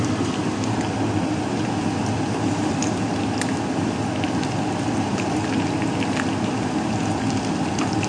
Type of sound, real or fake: real